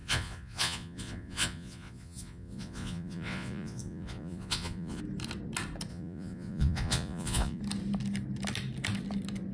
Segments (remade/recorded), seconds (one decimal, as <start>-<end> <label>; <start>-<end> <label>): 0.0-5.0 remade; 5.0-5.9 recorded; 5.9-7.6 remade; 7.6-9.5 recorded